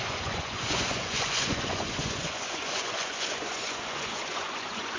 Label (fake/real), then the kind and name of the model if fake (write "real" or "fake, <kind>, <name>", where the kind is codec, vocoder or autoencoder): fake, vocoder, Vocos